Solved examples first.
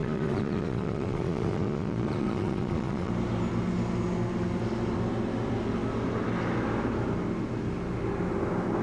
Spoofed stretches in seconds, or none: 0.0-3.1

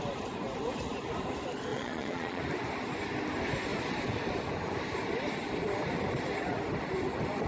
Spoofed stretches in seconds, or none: 1.7-2.4

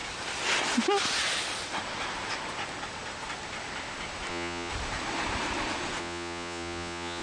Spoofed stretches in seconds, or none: 4.3-4.7; 6.0-7.2